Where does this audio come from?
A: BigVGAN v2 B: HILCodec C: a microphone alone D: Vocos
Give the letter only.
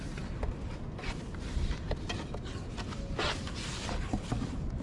C